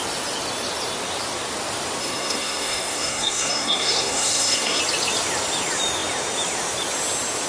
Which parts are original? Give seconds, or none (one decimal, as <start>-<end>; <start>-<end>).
0.0-2.0; 4.8-7.5